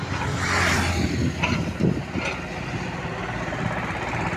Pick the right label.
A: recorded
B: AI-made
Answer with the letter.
A